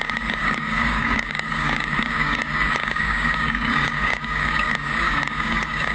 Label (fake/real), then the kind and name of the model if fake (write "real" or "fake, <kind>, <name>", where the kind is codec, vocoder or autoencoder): fake, codec, DAC